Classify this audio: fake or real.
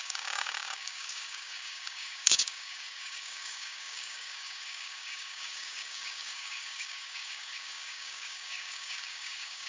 fake